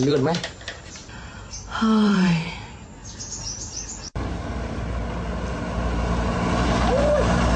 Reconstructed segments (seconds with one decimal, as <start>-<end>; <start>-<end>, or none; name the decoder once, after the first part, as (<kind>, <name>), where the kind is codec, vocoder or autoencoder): 0.0-3.0 (vocoder, BigVGAN v2); 6.8-7.6